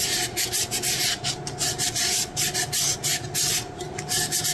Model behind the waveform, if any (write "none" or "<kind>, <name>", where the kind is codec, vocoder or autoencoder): none